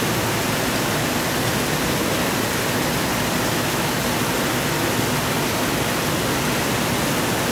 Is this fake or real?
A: real